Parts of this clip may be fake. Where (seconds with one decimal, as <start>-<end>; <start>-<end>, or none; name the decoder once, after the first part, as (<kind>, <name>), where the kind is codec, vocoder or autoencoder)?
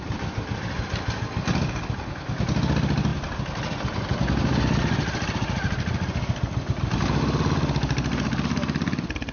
none